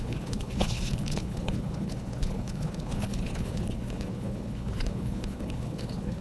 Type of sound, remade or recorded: remade